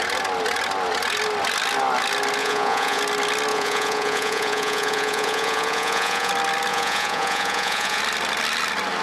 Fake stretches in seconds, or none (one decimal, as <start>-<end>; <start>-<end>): 2.4-3.0; 3.5-6.3; 6.7-8.0